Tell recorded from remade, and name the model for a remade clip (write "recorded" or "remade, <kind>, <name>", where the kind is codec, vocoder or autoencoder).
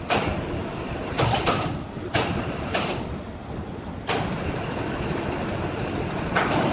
recorded